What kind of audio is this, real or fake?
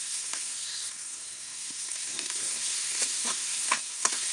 fake